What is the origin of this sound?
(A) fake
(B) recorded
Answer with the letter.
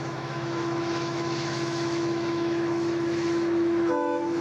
A